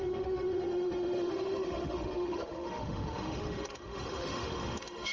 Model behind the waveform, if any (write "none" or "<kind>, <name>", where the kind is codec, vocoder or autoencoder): autoencoder, DAC-VAE